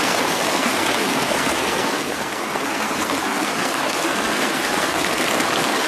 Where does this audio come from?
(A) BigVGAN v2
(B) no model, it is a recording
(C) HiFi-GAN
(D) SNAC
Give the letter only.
D